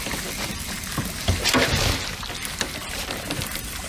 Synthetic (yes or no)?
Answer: no